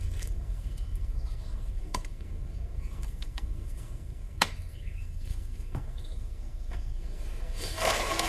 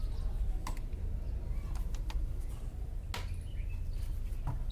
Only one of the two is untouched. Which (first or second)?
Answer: second